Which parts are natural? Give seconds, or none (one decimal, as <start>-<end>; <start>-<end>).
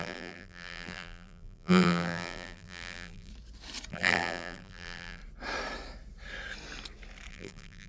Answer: 3.3-3.9; 5.2-7.3